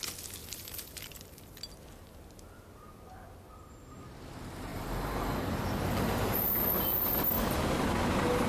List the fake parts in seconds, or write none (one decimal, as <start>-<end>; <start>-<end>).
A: 0.4-1.6; 4.7-7.0